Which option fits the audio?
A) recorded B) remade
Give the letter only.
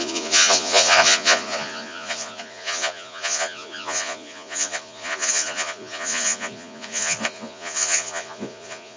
B